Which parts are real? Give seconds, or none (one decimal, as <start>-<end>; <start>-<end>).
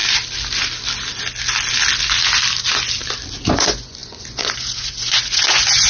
0.0-3.5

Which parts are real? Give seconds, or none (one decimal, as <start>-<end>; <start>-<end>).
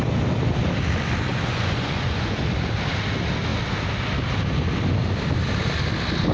0.0-1.3; 2.4-6.3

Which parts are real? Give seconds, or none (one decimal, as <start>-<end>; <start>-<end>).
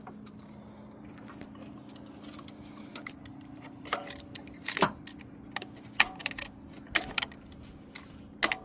0.0-8.6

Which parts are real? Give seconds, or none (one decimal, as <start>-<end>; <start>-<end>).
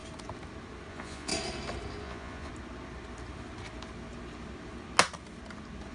0.0-0.9; 1.3-2.0; 2.5-5.9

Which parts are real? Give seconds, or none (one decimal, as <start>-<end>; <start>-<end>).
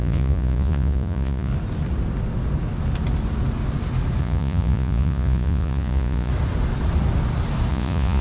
1.5-4.2; 6.3-7.7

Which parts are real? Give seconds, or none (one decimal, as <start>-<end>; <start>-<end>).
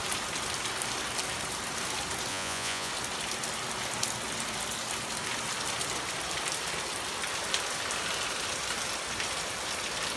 0.0-2.3; 2.9-10.2